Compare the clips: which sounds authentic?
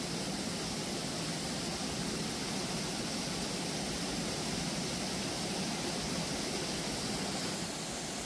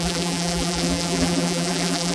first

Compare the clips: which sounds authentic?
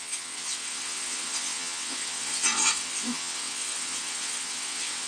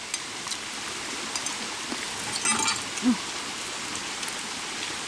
second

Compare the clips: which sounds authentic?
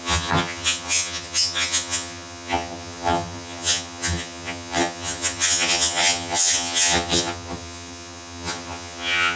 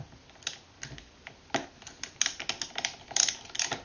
second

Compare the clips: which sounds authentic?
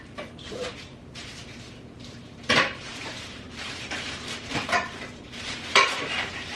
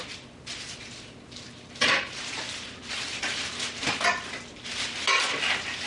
second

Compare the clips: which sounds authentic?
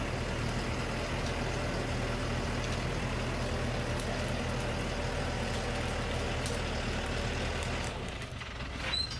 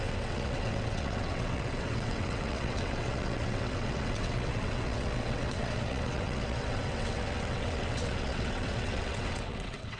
first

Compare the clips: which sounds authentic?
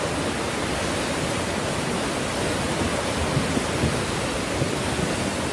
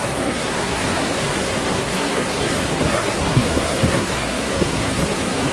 first